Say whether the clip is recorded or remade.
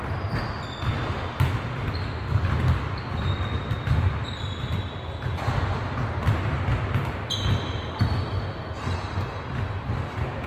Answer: recorded